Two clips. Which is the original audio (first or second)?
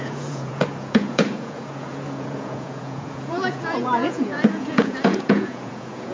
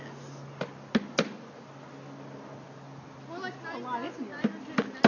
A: second